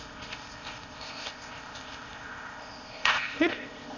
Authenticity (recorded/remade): remade